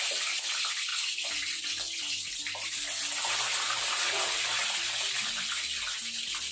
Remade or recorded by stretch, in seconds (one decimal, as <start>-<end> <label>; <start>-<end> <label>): 0.0-0.9 recorded; 0.9-1.6 remade; 1.6-3.9 recorded; 3.9-5.1 remade; 5.1-6.5 recorded